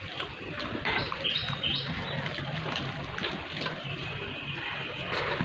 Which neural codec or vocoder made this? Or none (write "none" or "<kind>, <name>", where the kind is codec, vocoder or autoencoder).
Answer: none